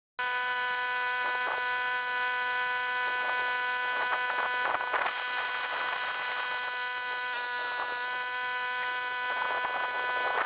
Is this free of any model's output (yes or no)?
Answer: yes